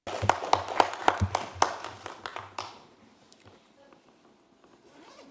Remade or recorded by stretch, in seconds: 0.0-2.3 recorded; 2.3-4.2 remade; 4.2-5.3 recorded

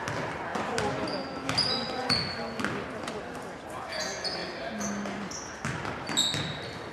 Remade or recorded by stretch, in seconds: 0.0-6.9 recorded

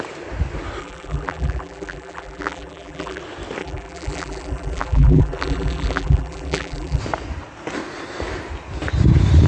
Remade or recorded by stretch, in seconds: 0.0-0.8 recorded; 0.8-3.2 remade; 3.2-3.6 recorded; 3.6-7.0 remade; 7.0-9.5 recorded

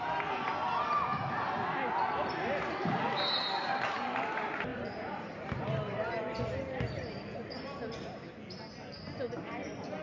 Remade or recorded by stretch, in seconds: 0.0-4.7 recorded; 4.7-6.4 remade; 6.4-10.0 recorded

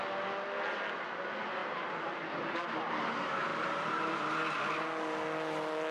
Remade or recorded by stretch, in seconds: 0.0-1.6 recorded; 1.6-2.9 remade; 2.9-3.5 recorded; 3.5-4.2 remade; 4.2-5.9 recorded

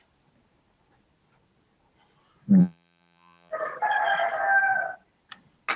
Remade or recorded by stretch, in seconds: 0.0-2.6 recorded; 2.6-3.5 remade; 3.5-5.8 recorded